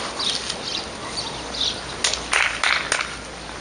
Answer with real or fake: real